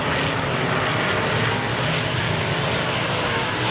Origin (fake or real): real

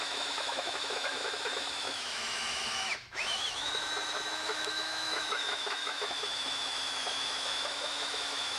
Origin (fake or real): fake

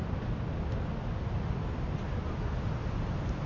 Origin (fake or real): real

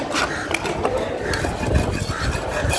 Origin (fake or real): real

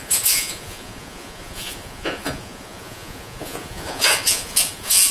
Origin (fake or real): fake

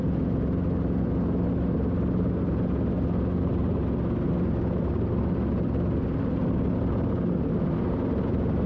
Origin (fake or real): real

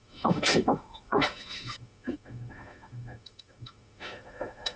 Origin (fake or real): fake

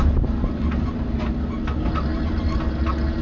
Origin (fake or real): real